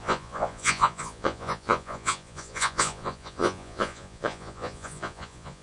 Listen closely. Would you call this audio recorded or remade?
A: remade